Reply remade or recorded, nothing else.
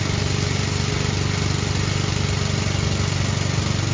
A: recorded